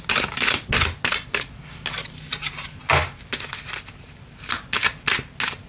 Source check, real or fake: real